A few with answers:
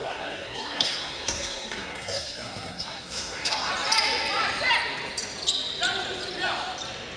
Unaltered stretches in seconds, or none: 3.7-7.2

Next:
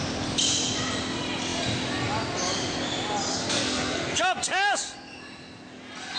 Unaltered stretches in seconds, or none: 0.0-3.3; 4.2-6.2